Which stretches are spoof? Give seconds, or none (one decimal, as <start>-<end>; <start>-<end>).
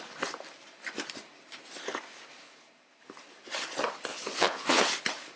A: 4.1-4.8